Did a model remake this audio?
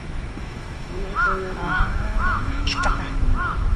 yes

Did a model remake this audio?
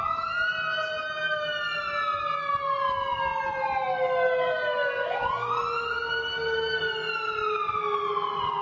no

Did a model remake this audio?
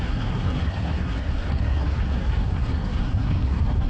yes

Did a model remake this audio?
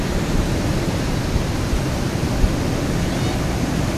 no